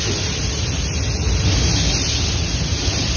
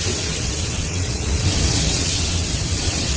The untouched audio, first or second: first